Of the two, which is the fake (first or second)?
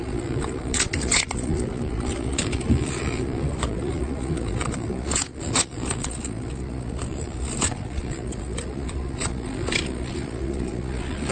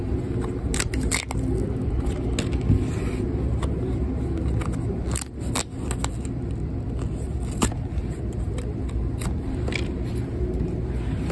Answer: first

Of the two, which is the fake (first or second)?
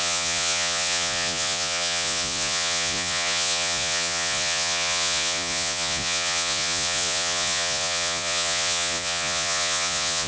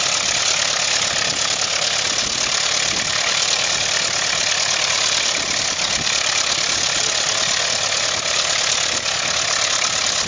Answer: first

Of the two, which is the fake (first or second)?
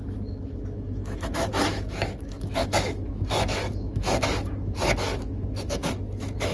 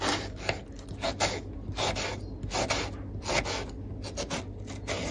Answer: first